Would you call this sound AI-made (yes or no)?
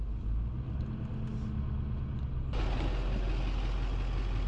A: no